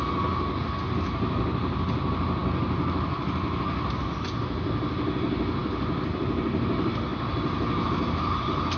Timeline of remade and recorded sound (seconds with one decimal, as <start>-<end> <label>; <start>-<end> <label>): 0.0-8.8 recorded